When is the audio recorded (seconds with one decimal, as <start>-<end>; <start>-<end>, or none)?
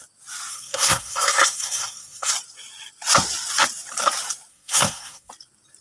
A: 0.0-0.5; 2.3-4.5; 5.3-5.8